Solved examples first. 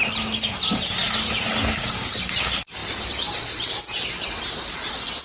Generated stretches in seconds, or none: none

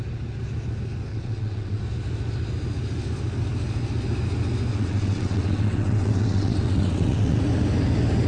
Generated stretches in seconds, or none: 1.1-1.8 (vocoder, WaveNeXt); 4.7-7.4

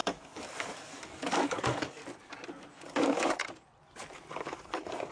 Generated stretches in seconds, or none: 0.0-2.0 (codec, DAC); 2.7-3.4; 4.3-5.1

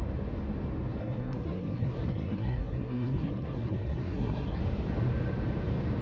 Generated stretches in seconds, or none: 1.0-4.6 (codec, SNAC)

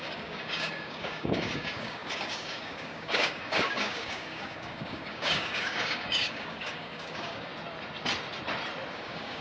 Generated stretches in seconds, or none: 0.0-7.5 (codec, DAC); 8.9-9.4